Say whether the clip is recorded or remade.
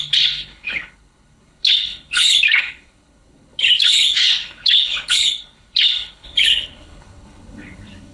remade